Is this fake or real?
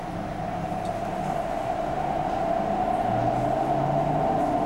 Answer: real